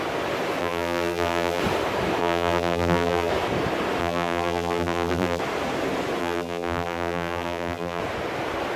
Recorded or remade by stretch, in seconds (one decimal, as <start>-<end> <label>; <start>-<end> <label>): 0.0-0.6 recorded; 0.6-1.6 remade; 1.6-2.2 recorded; 2.2-3.3 remade; 3.3-4.0 recorded; 4.0-5.4 remade; 5.4-6.2 recorded; 6.2-8.0 remade; 8.0-8.8 recorded